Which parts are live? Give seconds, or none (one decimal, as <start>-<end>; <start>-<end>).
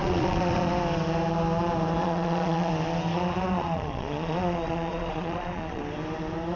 0.7-2.0; 2.7-3.1; 5.8-6.6